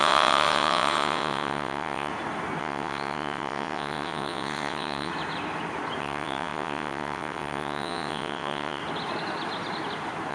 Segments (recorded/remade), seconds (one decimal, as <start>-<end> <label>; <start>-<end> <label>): 0.0-2.1 remade; 2.1-2.6 recorded; 2.6-5.1 remade; 5.1-6.0 recorded; 6.0-8.8 remade; 8.8-10.3 recorded